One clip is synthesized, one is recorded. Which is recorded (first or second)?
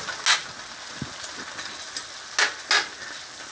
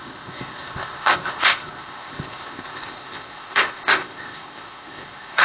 first